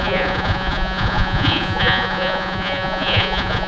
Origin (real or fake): fake